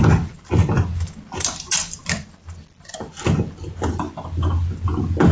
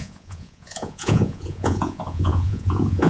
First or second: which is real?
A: first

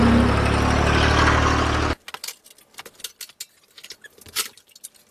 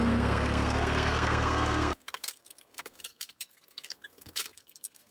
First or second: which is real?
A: first